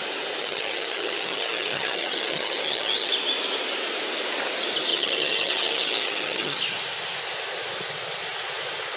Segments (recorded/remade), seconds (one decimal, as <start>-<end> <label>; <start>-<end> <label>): 0.0-0.4 recorded; 0.4-3.1 remade; 3.1-4.9 recorded; 4.9-6.6 remade; 6.6-9.0 recorded